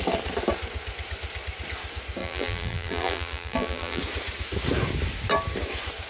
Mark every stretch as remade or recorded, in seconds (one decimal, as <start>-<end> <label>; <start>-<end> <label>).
0.0-2.2 recorded; 2.2-4.0 remade; 4.0-6.1 recorded

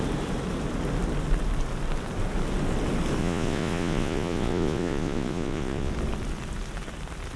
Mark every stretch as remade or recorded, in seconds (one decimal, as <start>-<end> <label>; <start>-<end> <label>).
0.0-3.2 recorded; 3.2-5.9 remade; 5.9-7.4 recorded

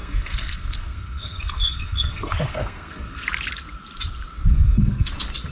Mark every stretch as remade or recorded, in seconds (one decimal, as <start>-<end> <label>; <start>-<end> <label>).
0.0-3.3 remade; 3.3-4.5 recorded; 4.5-5.1 remade; 5.1-5.5 recorded

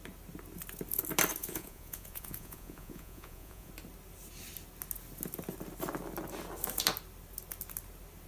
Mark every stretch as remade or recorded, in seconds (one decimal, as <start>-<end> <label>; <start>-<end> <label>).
0.0-1.4 recorded; 1.4-3.7 remade; 3.7-8.3 recorded

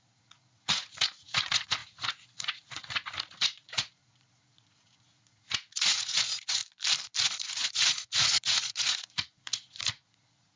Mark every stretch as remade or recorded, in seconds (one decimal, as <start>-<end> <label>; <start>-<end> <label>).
0.0-6.6 remade; 6.6-7.2 recorded; 7.2-10.6 remade

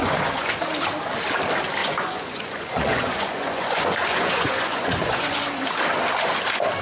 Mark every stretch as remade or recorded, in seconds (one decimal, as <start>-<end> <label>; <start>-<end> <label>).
0.0-0.6 remade; 0.6-1.8 recorded; 1.8-5.4 remade; 5.4-6.8 recorded